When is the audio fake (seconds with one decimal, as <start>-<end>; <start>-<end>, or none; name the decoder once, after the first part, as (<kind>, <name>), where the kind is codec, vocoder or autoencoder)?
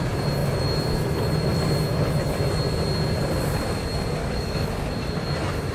4.2-4.9 (codec, DAC)